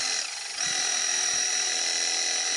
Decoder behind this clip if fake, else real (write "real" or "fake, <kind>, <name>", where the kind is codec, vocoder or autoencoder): real